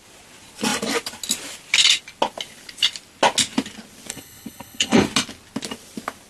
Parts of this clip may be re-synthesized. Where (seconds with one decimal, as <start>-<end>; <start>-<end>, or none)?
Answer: 4.1-5.0